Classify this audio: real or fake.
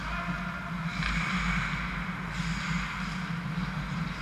real